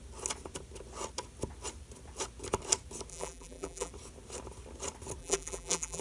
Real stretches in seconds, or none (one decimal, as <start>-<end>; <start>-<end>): 0.0-3.1; 3.9-5.2